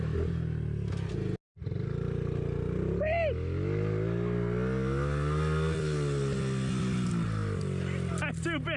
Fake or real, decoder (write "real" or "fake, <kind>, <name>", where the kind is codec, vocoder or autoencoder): real